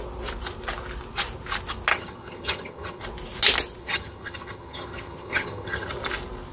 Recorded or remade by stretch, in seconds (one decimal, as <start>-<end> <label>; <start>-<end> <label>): 0.0-1.9 recorded; 1.9-3.0 remade; 3.0-3.8 recorded; 3.8-5.9 remade; 5.9-6.5 recorded